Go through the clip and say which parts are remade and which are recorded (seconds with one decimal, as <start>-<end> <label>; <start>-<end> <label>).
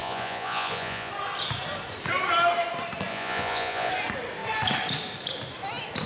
0.0-1.1 remade; 1.1-3.1 recorded; 3.1-3.9 remade; 3.9-6.1 recorded